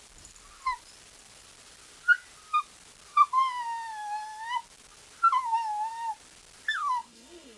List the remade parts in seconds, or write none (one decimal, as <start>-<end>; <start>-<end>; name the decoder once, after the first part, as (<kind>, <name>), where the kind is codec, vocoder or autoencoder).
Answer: 6.8-7.6 (codec, SNAC)